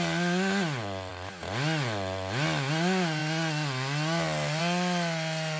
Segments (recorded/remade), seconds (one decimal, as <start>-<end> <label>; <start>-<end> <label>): 0.0-5.6 recorded